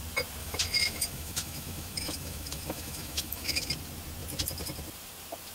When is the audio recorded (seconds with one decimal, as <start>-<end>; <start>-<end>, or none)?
0.0-0.4; 3.7-5.5